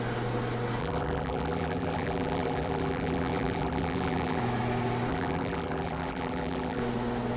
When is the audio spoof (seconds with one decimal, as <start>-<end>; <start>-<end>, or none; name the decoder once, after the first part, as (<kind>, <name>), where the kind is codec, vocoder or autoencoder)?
0.8-4.4 (vocoder, BigVGAN v2); 5.1-6.8